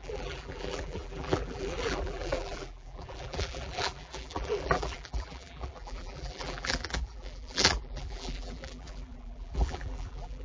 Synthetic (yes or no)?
yes